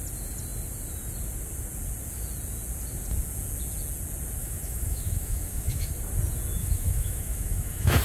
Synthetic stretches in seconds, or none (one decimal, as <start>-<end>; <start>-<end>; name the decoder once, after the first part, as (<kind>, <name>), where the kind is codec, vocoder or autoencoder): 4.4-5.9 (autoencoder, DAC-VAE); 6.6-8.0